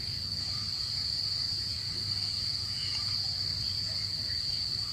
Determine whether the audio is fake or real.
real